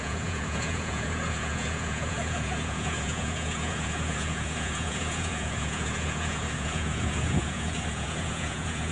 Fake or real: fake